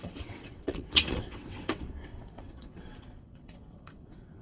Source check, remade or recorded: remade